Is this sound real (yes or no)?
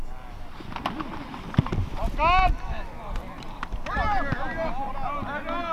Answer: yes